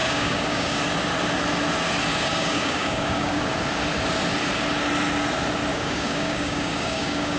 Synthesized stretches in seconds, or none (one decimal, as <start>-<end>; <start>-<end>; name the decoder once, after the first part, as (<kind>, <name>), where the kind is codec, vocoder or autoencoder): 0.0-0.8 (codec, DAC); 2.1-3.4; 5.7-7.4